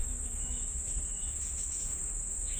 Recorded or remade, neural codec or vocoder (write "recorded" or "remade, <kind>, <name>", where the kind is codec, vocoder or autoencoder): remade, autoencoder, DAC-VAE